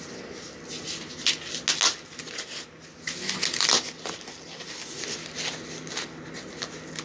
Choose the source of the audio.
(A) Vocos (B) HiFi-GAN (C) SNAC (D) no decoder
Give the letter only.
D